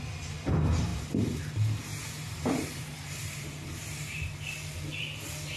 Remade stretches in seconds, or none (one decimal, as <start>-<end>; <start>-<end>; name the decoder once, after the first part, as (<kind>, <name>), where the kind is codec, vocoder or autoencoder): 1.9-4.3 (vocoder, BigVGAN v2)